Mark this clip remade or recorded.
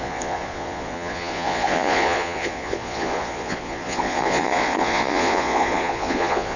remade